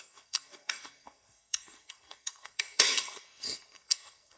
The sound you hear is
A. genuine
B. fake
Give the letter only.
B